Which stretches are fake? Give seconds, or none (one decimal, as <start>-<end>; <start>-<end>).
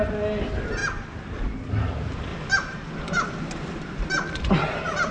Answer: 2.3-5.1